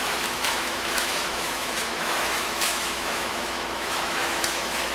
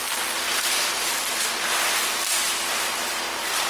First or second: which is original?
second